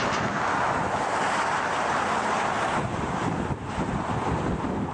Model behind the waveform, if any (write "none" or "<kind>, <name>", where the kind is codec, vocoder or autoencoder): none